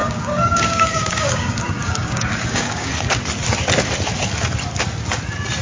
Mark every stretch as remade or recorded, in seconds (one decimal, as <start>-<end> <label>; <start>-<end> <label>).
0.0-2.9 remade; 2.9-5.6 recorded